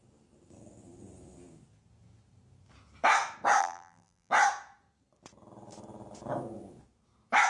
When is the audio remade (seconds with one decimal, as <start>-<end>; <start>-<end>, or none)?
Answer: 3.6-4.3

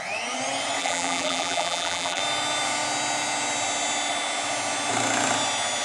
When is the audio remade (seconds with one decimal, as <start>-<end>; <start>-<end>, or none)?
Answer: 0.8-2.2